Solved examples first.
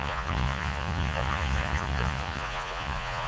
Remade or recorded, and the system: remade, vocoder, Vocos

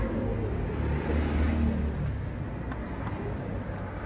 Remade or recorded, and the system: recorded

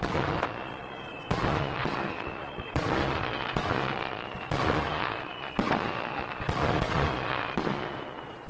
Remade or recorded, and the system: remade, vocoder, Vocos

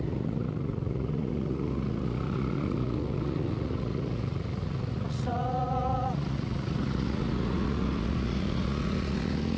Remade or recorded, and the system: remade, vocoder, Vocos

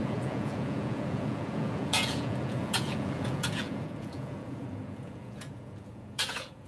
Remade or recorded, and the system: remade, vocoder, Vocos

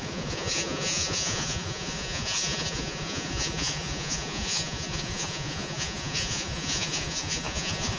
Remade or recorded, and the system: remade, vocoder, Vocos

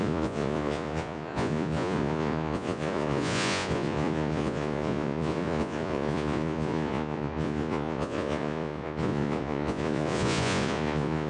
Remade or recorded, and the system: remade, vocoder, Vocos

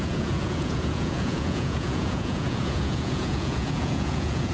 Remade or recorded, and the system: remade, vocoder, Vocos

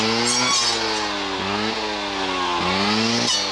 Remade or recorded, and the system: recorded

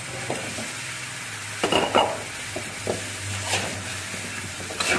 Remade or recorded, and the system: recorded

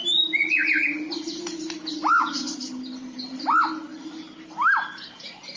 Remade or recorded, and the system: recorded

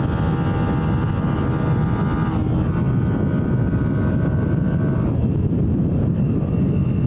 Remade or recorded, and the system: recorded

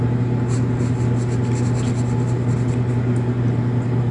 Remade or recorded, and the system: recorded